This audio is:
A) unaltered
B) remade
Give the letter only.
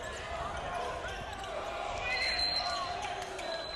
A